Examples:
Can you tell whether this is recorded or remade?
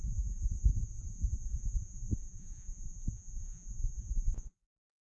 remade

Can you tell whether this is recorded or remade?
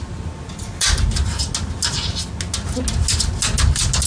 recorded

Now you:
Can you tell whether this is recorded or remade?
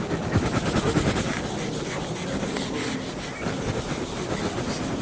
recorded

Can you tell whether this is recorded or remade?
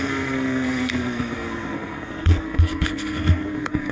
remade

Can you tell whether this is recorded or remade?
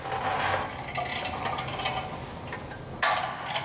recorded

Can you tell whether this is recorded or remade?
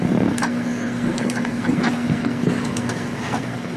remade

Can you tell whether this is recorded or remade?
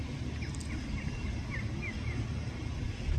recorded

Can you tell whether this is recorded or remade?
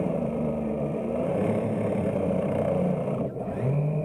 remade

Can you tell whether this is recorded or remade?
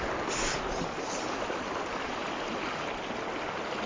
recorded